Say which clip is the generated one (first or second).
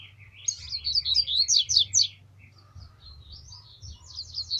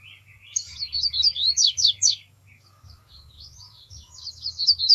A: second